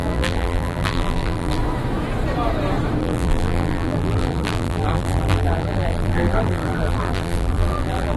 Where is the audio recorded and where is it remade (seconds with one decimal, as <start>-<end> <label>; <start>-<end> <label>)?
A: 0.0-1.6 remade; 1.6-3.0 recorded; 3.0-8.2 remade